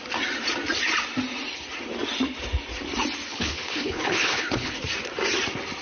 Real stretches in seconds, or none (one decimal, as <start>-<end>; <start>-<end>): 0.0-3.3; 4.7-5.8